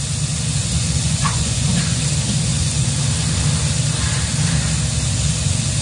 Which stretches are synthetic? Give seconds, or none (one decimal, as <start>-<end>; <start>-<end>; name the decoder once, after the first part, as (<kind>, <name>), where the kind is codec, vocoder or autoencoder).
0.6-2.0 (vocoder, Vocos); 2.5-3.0